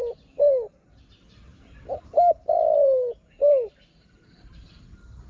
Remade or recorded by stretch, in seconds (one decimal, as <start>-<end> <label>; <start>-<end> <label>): 0.0-1.5 recorded; 1.5-4.7 remade; 4.7-5.3 recorded